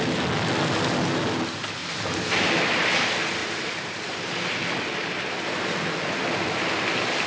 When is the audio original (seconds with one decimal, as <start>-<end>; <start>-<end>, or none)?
0.0-1.8; 2.5-3.4; 4.6-7.3